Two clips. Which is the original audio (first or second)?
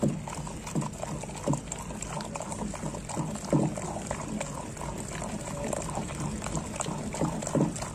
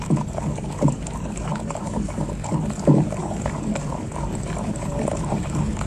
first